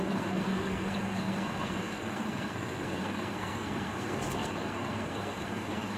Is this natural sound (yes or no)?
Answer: no